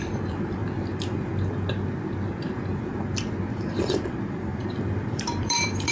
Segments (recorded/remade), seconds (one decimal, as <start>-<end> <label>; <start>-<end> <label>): 0.0-0.6 remade; 0.6-3.5 recorded; 3.5-5.9 remade